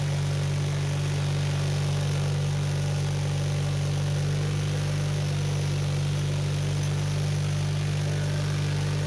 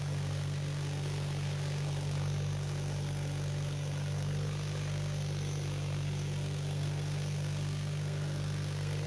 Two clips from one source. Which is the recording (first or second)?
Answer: first